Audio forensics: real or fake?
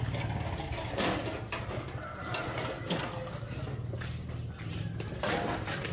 real